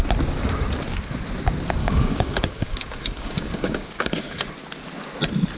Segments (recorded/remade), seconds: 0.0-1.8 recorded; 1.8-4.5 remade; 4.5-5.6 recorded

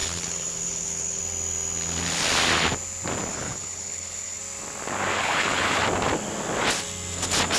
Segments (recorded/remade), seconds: 0.0-1.2 remade; 1.2-3.3 recorded; 3.3-4.4 remade; 4.4-5.2 recorded; 5.2-5.8 remade; 5.8-7.6 recorded

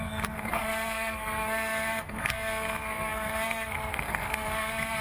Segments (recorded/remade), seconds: 0.0-5.0 remade

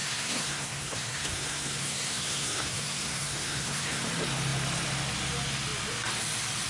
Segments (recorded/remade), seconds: 0.0-4.0 remade; 4.0-6.7 recorded

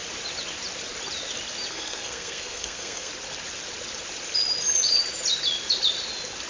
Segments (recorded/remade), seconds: 0.0-1.7 recorded; 1.7-3.1 remade; 3.1-6.5 recorded

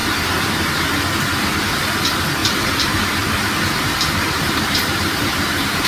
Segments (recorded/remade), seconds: 0.0-2.4 recorded; 2.4-5.9 remade

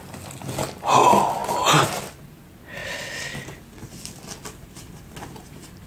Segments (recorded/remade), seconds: 0.0-5.9 recorded

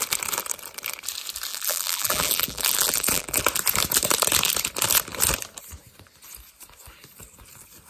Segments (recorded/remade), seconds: 0.0-1.5 recorded; 1.5-3.4 remade; 3.4-7.9 recorded